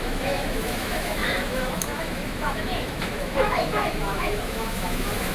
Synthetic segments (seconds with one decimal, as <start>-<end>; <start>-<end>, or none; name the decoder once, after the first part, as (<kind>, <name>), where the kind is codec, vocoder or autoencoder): 0.0-5.3 (autoencoder, DAC-VAE)